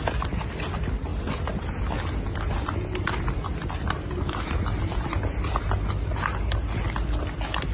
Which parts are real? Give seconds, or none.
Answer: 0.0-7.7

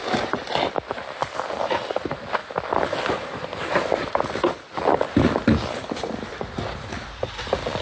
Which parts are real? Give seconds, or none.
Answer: 0.0-7.8

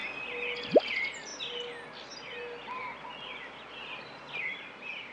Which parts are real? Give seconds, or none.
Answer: 0.0-0.6; 1.3-4.4

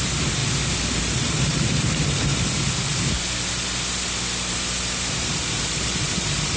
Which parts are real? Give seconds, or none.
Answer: 0.4-1.0; 2.3-4.5

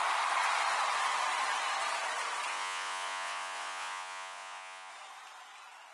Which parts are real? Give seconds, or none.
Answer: 0.0-2.5; 4.9-5.9

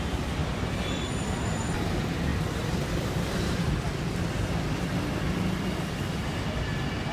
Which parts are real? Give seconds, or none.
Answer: 0.0-2.3; 6.6-7.1

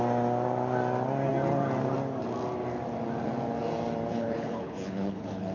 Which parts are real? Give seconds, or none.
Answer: 0.0-4.1

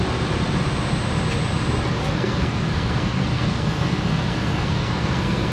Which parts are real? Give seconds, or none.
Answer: 0.0-2.0